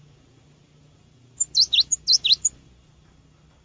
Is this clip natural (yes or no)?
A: yes